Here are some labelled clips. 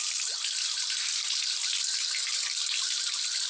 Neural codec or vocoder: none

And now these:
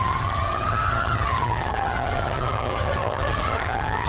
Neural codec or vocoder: vocoder, HiFi-GAN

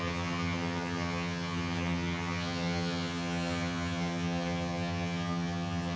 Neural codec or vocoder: vocoder, HiFi-GAN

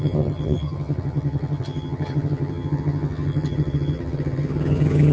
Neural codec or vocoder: vocoder, HiFi-GAN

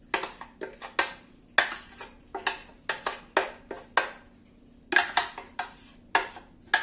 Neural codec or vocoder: none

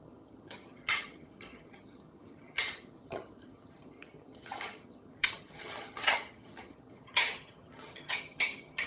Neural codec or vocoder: vocoder, HiFi-GAN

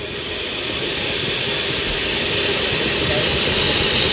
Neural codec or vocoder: none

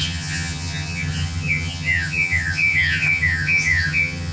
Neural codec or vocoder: vocoder, HiFi-GAN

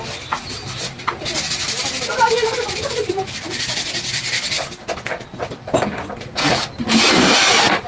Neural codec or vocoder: none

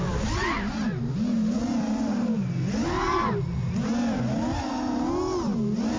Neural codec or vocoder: none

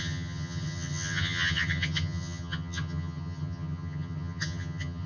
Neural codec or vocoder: vocoder, HiFi-GAN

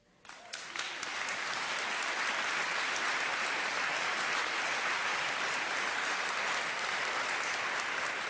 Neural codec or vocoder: none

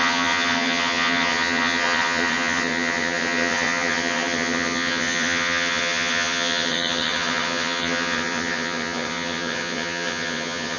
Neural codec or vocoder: vocoder, HiFi-GAN